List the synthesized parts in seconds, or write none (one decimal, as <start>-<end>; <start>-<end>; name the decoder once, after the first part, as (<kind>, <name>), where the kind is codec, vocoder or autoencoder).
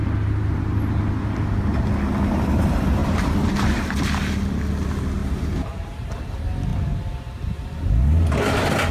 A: 3.0-3.6 (vocoder, BigVGAN v2); 5.2-6.1